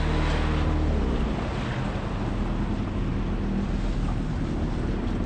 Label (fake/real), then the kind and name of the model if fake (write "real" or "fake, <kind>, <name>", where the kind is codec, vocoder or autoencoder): real